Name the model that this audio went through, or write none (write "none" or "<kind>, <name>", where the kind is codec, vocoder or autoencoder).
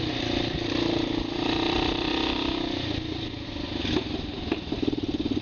vocoder, BigVGAN v2